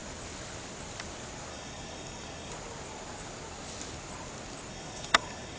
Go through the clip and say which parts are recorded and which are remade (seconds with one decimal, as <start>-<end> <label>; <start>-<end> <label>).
0.0-1.5 recorded; 1.5-2.5 remade; 2.5-4.7 recorded; 4.7-5.6 remade